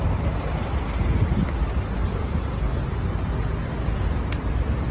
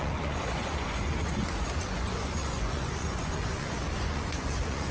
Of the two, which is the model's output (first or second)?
second